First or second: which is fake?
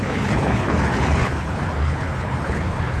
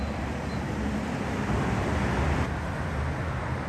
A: first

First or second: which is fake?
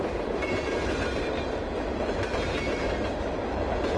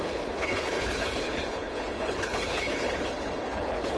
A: second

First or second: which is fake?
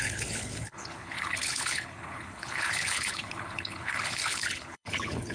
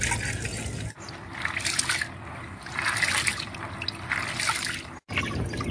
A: first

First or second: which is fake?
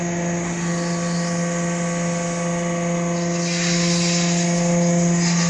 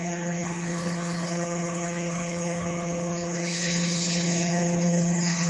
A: second